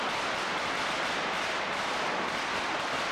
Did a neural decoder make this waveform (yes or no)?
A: no